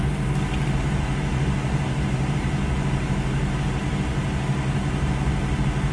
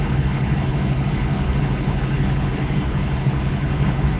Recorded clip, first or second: first